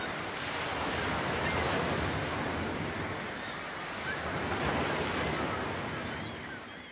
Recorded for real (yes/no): yes